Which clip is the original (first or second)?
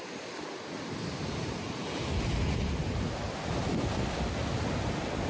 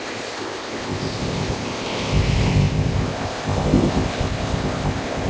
first